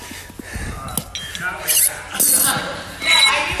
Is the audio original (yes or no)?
yes